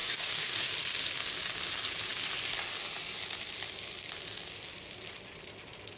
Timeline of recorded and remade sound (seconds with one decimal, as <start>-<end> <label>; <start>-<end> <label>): 0.0-0.7 remade; 0.7-6.0 recorded